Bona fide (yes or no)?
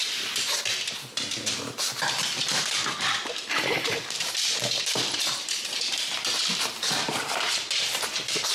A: no